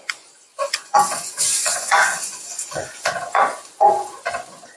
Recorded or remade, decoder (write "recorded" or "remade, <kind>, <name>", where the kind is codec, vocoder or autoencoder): remade, vocoder, Vocos